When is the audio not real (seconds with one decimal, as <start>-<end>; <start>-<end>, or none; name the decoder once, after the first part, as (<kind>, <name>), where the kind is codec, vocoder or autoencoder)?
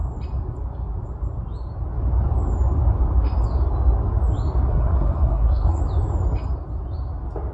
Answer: 4.7-5.8 (codec, SNAC)